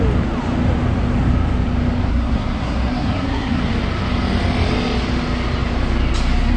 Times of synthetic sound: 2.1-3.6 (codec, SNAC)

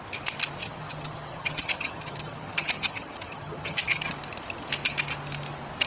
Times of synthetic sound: 0.6-4.1 (vocoder, HiFi-GAN)

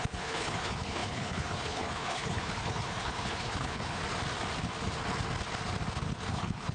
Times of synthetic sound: 0.0-4.0 (codec, HILCodec); 6.3-6.7

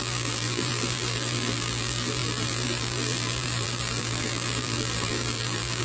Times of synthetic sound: 0.0-5.8 (vocoder, BigVGAN v2)